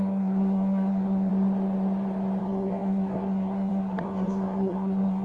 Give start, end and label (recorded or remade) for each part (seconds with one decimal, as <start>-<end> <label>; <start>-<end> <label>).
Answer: 0.0-1.3 remade; 1.3-2.4 recorded; 2.4-5.2 remade